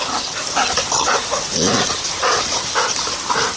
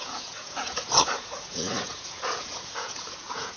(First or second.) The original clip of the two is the first